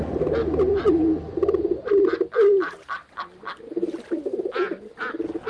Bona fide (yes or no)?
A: yes